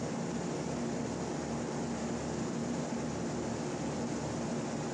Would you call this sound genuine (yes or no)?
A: yes